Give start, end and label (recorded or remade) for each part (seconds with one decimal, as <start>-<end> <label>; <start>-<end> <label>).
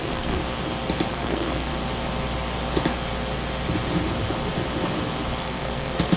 0.0-0.4 remade; 0.4-1.1 recorded; 1.1-1.7 remade; 1.7-5.4 recorded; 5.4-6.2 remade